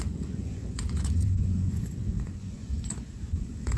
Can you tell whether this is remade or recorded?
remade